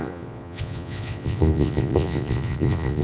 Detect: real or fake fake